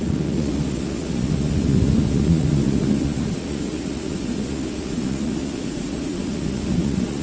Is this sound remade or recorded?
remade